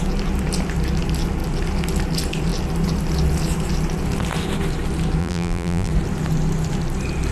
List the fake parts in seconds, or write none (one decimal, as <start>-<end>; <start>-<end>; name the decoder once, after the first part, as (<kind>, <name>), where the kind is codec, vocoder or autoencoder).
5.2-5.9 (vocoder, BigVGAN v2)